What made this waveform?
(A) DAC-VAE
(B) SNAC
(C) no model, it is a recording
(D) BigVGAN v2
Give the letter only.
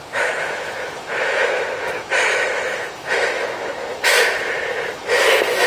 A